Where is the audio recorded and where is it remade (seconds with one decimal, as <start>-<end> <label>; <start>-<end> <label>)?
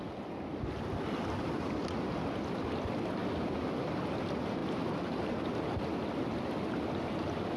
0.0-7.6 recorded